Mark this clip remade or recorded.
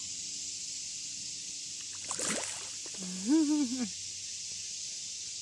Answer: recorded